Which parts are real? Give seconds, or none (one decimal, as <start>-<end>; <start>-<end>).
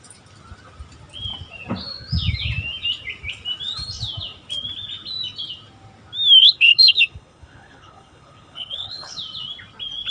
0.0-6.4; 9.2-10.1